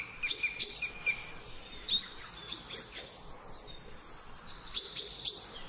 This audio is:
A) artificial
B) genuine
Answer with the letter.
B